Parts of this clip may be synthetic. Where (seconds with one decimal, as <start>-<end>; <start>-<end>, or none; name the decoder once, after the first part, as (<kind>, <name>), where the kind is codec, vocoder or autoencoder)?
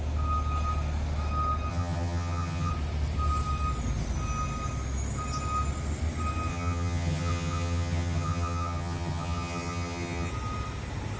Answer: 1.7-2.7 (vocoder, HiFi-GAN); 6.5-10.3